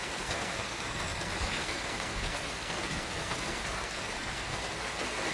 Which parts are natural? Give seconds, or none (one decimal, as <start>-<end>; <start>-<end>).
none